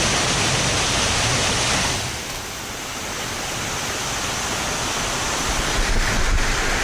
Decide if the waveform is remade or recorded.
recorded